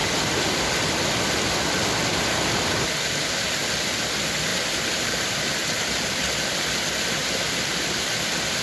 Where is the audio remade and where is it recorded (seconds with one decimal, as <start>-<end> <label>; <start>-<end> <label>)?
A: 0.0-4.5 recorded; 4.5-5.5 remade; 5.5-8.6 recorded